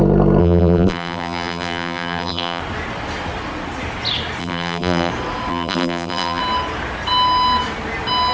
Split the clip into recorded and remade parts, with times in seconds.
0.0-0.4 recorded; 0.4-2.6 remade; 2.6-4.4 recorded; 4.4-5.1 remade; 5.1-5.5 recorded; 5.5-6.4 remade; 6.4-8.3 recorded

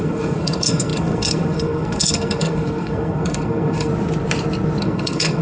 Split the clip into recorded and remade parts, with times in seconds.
0.0-3.9 remade; 3.9-4.8 recorded; 4.8-5.4 remade

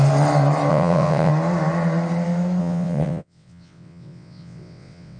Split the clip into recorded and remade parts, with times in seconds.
0.0-0.7 recorded; 0.7-1.3 remade; 1.3-2.6 recorded; 2.6-5.2 remade

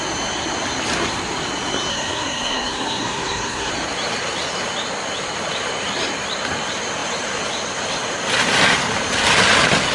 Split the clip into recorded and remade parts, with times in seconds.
0.0-1.9 recorded; 1.9-3.7 remade; 3.7-9.9 recorded

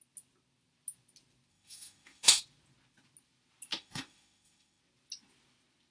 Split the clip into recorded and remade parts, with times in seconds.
0.0-1.5 recorded; 1.5-2.4 remade; 2.4-3.7 recorded; 3.7-4.8 remade; 4.8-5.9 recorded

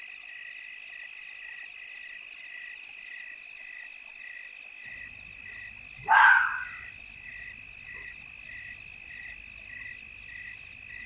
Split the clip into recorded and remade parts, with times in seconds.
0.0-6.0 recorded; 6.0-6.6 remade; 6.6-11.1 recorded

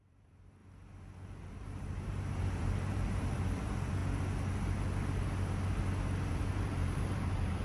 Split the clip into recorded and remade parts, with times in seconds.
0.0-0.6 remade; 0.6-1.5 recorded; 1.5-4.0 remade; 4.0-6.3 recorded; 6.3-7.6 remade

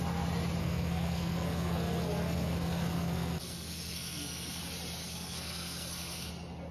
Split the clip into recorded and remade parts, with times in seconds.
0.0-0.6 recorded; 0.6-4.6 remade; 4.6-5.0 recorded; 5.0-6.3 remade; 6.3-6.7 recorded